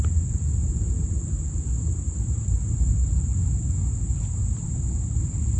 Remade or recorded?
recorded